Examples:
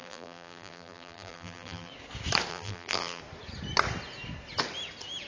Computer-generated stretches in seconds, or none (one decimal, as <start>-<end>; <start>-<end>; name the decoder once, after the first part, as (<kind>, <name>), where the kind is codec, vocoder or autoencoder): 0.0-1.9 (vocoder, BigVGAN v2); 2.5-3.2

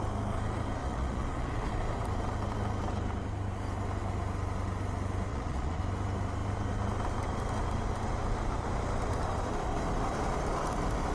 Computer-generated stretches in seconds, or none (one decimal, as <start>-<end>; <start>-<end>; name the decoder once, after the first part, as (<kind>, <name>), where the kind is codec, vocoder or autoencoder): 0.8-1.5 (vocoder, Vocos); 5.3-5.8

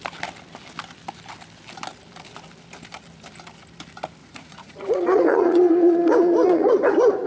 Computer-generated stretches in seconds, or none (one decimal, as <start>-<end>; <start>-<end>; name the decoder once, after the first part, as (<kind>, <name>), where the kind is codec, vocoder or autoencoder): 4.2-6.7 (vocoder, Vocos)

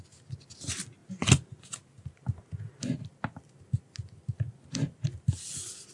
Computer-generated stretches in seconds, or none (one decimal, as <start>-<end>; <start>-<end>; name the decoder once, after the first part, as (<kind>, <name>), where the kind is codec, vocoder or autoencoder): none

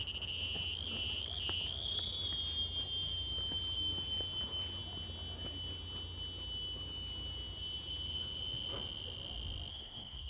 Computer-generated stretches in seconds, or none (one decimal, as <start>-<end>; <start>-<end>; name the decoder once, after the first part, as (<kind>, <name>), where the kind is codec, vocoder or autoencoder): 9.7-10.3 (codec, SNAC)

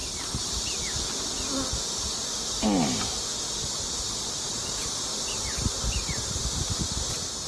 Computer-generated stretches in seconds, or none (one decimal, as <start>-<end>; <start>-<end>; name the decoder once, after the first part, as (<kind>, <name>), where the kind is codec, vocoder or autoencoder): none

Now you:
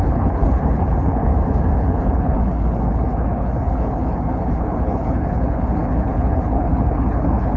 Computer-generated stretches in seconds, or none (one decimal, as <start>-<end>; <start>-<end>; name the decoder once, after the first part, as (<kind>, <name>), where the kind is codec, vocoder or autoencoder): 0.0-1.3 (codec, HILCodec); 1.8-7.6